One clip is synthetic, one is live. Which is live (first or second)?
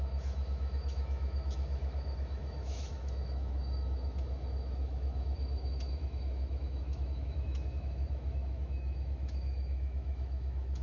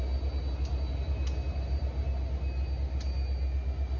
second